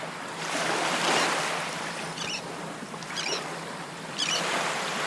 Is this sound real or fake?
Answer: fake